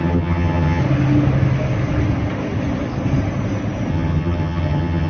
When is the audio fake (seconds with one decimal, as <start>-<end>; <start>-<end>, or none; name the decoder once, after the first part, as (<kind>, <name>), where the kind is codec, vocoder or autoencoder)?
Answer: 0.0-0.8 (vocoder, HiFi-GAN); 3.9-5.1